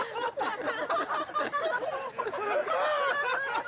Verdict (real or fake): real